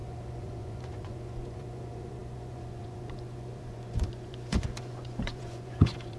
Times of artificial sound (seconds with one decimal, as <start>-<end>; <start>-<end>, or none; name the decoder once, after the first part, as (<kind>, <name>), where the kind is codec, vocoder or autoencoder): 0.0-6.2 (vocoder, Vocos)